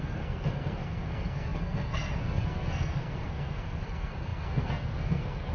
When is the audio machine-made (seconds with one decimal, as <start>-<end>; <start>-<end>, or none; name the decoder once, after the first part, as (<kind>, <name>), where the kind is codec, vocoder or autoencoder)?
0.0-5.5 (codec, SNAC)